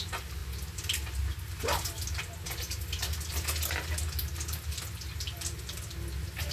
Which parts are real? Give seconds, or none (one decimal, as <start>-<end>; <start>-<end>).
0.0-6.5